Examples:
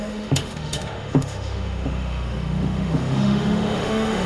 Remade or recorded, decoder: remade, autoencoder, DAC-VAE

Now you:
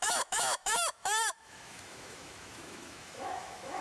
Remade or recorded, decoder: remade, autoencoder, DAC-VAE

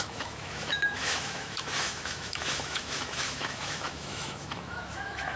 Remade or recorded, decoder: remade, autoencoder, DAC-VAE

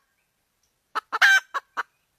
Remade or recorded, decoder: recorded